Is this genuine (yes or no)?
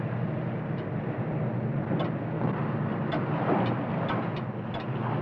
yes